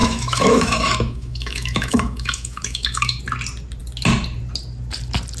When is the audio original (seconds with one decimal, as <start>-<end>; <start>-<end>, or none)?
3.2-5.4